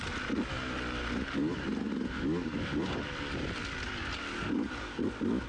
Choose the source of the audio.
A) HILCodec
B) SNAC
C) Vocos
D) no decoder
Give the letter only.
D